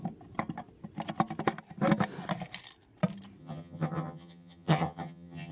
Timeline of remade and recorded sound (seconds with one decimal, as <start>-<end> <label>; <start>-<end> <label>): 0.0-3.4 recorded; 3.4-5.5 remade